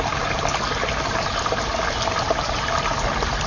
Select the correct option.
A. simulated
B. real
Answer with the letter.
B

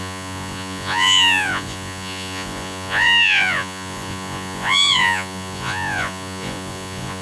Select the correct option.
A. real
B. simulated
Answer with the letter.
B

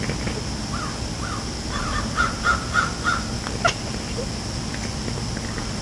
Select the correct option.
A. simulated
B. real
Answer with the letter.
B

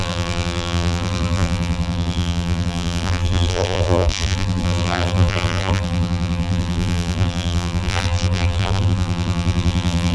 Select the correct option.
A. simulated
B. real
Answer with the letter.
A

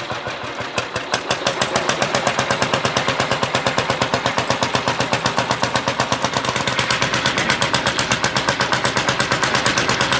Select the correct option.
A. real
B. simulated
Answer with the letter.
A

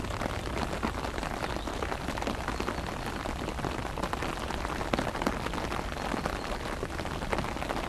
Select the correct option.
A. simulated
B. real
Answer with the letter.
B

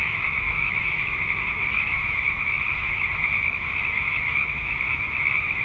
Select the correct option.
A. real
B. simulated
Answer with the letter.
B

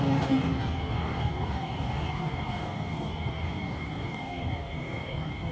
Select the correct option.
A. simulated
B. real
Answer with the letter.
A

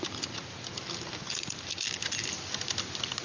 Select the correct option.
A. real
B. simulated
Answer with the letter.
A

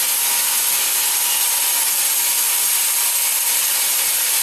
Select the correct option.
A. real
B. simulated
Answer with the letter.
A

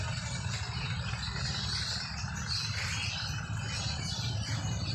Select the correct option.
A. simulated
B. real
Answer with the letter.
B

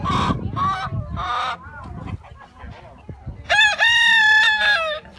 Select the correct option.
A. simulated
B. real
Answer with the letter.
B